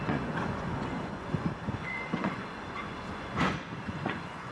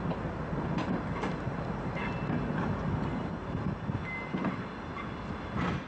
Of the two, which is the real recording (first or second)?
second